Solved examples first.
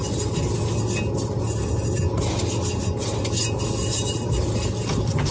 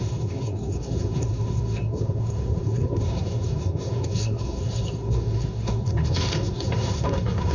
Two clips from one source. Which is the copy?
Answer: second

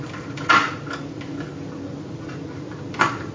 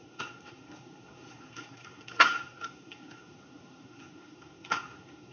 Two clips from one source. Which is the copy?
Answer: second